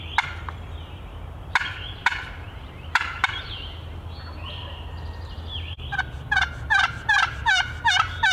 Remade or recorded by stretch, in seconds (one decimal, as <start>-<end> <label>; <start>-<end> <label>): 0.0-2.0 recorded; 2.0-3.5 remade; 3.5-8.3 recorded